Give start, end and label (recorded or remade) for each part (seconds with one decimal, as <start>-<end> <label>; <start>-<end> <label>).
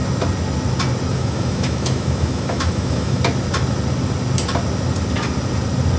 0.0-1.1 recorded; 1.1-3.2 remade; 3.2-6.0 recorded